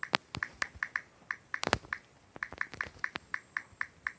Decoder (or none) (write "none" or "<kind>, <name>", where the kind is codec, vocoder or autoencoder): none